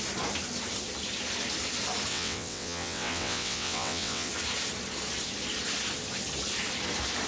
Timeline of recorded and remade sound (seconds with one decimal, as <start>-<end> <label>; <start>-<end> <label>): 0.0-2.1 recorded; 2.1-4.3 remade; 4.3-7.3 recorded